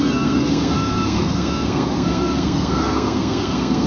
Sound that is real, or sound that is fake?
fake